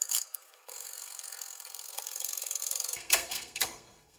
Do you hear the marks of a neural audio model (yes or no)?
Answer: yes